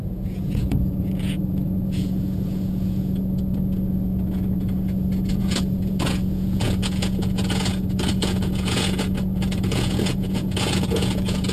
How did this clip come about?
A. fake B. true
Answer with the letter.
A